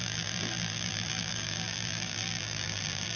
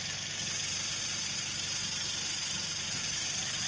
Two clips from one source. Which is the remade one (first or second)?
first